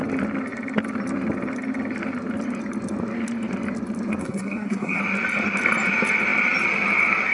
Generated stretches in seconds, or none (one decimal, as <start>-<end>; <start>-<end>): 4.2-5.0